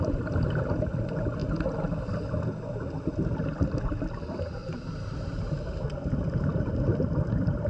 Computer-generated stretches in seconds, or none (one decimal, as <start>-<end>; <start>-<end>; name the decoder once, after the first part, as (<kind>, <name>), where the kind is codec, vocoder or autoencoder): 0.0-1.4 (vocoder, BigVGAN v2); 3.8-4.6; 6.7-7.7